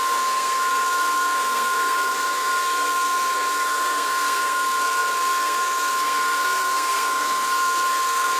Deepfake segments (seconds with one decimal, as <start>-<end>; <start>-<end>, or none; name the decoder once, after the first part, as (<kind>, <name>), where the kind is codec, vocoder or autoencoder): 0.0-8.4 (codec, SNAC)